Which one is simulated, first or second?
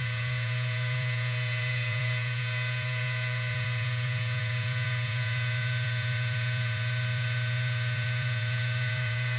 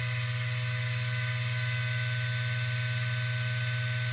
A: first